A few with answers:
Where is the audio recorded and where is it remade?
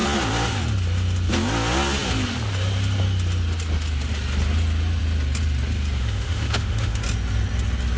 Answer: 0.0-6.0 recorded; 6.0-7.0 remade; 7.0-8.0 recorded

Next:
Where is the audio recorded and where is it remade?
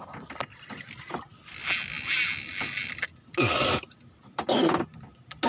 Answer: 0.0-5.5 recorded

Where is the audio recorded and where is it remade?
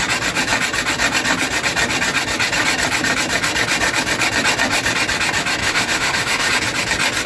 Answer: 0.0-5.6 recorded; 5.6-6.5 remade; 6.5-7.3 recorded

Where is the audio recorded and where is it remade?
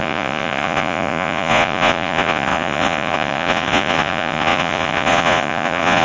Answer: 0.0-6.0 remade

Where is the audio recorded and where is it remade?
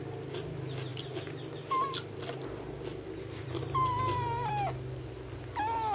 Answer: 0.0-2.7 recorded; 2.7-4.5 remade; 4.5-5.9 recorded